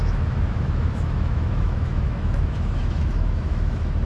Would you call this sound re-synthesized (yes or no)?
yes